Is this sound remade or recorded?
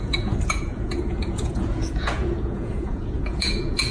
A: remade